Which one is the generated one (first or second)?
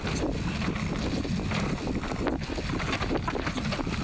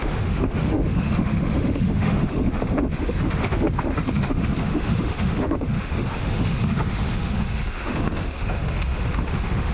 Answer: second